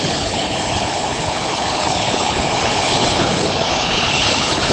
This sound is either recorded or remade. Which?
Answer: remade